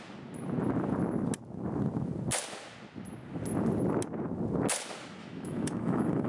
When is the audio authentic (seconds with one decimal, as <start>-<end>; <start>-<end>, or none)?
0.0-5.2